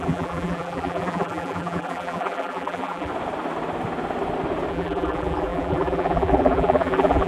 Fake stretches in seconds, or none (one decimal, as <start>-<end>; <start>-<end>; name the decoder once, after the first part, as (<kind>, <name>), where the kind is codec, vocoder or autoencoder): 0.0-3.1 (vocoder, BigVGAN v2); 4.7-7.3